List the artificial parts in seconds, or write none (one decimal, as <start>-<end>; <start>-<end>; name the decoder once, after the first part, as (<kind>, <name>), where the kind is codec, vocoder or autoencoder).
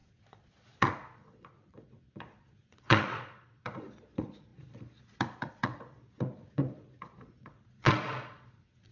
0.0-8.9 (vocoder, Vocos)